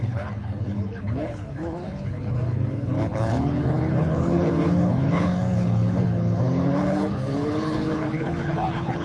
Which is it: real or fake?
fake